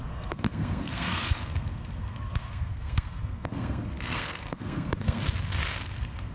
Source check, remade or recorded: remade